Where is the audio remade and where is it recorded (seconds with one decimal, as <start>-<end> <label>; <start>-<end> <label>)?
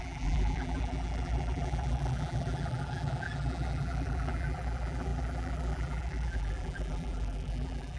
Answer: 0.0-8.0 remade